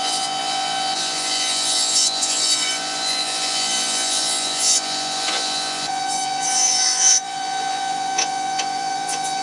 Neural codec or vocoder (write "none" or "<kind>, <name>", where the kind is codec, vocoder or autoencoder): vocoder, Vocos